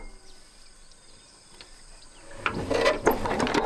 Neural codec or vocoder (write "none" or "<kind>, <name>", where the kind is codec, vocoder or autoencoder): none